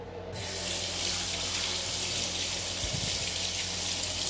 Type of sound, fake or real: real